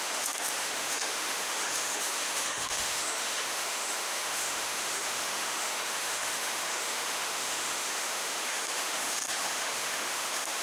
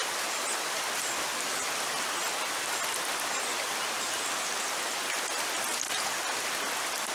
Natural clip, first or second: second